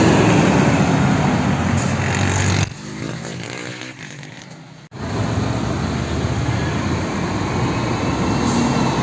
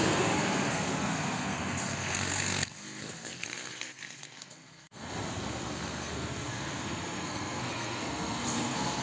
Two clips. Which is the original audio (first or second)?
first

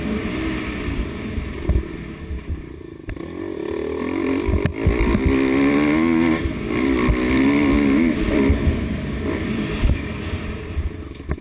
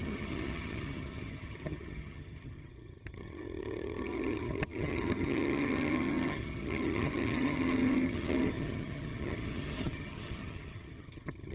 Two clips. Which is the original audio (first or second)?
first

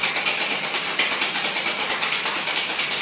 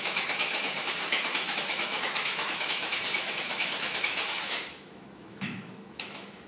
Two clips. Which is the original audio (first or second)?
first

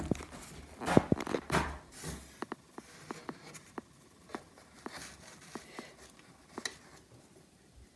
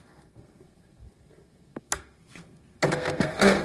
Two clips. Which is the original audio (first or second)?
first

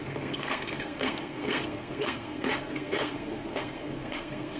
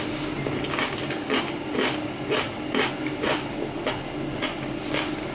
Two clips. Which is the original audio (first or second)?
second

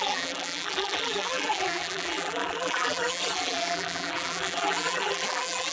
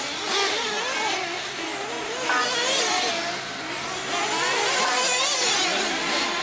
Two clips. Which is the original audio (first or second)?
second